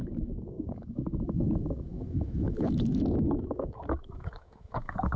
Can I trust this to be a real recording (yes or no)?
no